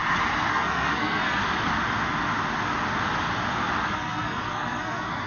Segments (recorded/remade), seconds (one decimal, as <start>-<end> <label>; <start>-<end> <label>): 0.0-0.5 recorded; 0.5-1.4 remade; 1.4-3.9 recorded; 3.9-5.3 remade